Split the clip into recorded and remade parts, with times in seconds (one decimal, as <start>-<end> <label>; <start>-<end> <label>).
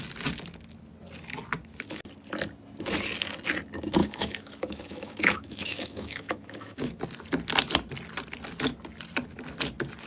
0.0-4.0 recorded; 4.0-7.0 remade; 7.0-10.1 recorded